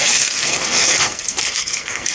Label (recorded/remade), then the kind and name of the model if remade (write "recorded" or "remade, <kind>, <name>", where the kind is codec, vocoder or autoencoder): remade, codec, SNAC